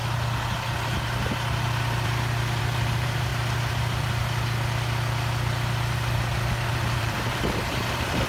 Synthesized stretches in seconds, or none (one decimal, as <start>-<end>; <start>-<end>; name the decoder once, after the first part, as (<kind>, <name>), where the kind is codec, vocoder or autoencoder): 2.6-3.3 (vocoder, BigVGAN v2); 6.7-8.3